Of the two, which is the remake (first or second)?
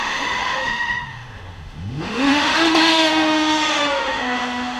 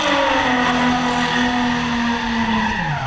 first